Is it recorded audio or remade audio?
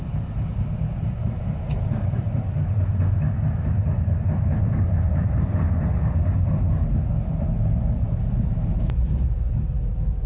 recorded